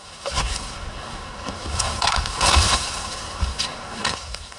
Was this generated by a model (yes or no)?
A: yes